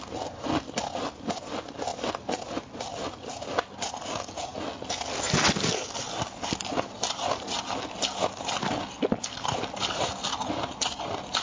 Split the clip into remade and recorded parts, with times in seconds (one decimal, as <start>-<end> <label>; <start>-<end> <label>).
0.0-11.4 recorded